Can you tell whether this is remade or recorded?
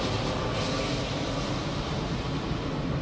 recorded